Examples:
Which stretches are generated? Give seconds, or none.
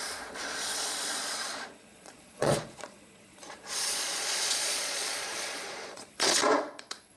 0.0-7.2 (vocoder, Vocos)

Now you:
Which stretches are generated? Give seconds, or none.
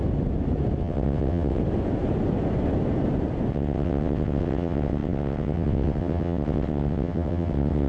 0.8-1.6 (vocoder, WaveNeXt); 3.5-7.9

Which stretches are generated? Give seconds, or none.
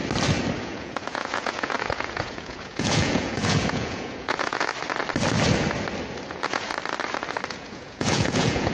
0.6-4.7 (vocoder, Vocos); 6.3-6.7; 7.5-8.7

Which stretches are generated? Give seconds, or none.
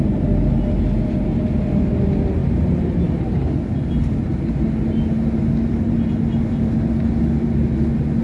none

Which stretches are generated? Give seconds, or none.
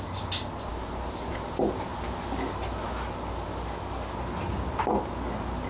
none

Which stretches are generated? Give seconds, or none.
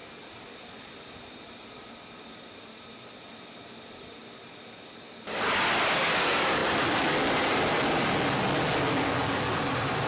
none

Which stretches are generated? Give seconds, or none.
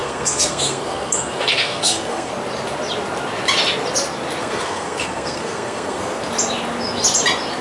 0.0-2.3 (codec, SNAC); 4.4-6.2